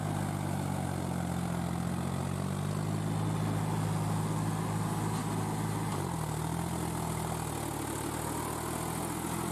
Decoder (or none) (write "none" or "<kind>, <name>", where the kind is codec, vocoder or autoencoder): none